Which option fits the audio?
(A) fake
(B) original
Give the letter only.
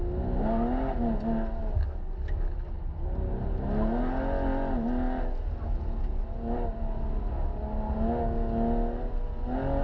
B